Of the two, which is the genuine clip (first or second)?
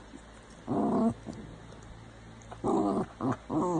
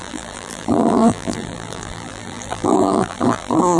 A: first